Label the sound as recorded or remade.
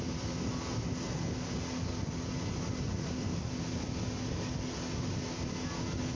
recorded